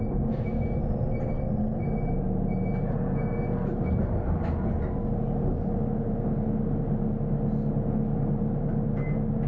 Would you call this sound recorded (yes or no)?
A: yes